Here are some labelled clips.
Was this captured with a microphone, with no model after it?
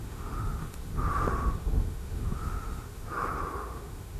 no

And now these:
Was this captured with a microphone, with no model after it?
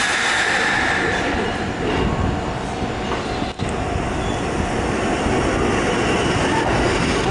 yes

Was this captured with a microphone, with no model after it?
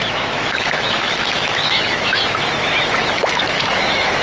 no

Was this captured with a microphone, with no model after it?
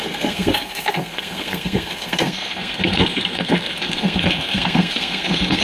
no